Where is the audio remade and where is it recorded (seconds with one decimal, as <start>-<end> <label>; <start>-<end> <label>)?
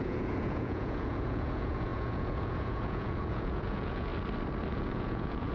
0.0-4.1 remade; 4.1-4.7 recorded; 4.7-5.5 remade